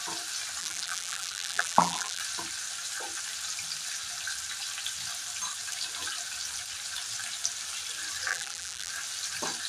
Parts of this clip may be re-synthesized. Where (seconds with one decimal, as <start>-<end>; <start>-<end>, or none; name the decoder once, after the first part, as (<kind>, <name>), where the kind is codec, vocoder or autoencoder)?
0.6-2.2 (vocoder, BigVGAN v2); 8.3-8.9